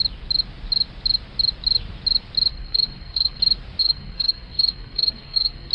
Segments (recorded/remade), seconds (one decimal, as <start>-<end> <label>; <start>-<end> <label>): 0.0-2.5 recorded; 2.5-3.4 remade; 3.4-3.8 recorded; 3.8-5.7 remade